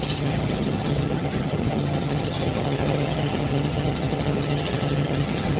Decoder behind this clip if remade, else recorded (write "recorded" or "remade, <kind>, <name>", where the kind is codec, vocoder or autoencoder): remade, vocoder, HiFi-GAN